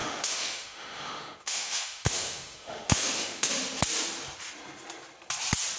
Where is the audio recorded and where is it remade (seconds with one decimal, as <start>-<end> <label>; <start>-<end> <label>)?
0.0-3.5 remade; 3.5-5.8 recorded